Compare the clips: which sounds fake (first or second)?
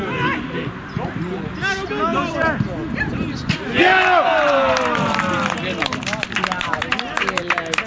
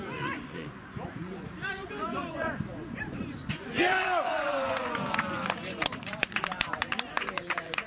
second